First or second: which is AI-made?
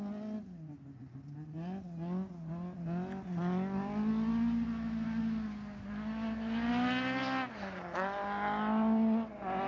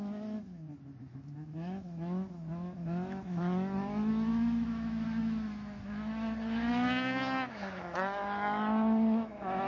second